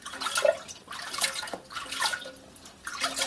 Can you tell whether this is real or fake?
real